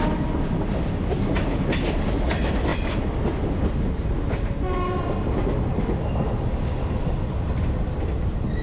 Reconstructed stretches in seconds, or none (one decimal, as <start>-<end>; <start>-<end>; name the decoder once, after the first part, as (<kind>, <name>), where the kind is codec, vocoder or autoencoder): none